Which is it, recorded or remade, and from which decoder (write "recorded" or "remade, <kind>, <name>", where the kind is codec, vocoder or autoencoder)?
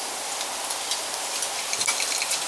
recorded